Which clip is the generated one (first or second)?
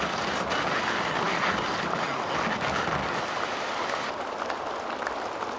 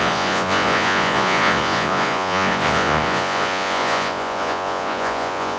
second